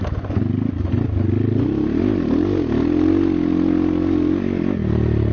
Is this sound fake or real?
real